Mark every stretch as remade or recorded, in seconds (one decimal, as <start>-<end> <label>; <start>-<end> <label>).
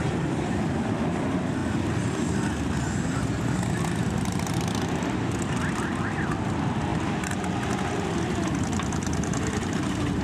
0.0-1.6 remade; 1.6-3.9 recorded; 3.9-10.2 remade